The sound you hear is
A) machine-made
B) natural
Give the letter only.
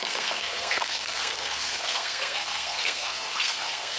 A